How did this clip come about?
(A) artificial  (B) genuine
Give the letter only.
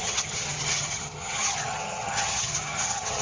A